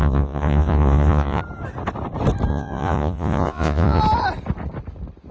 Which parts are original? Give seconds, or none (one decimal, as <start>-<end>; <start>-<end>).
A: 1.4-2.5; 4.0-5.3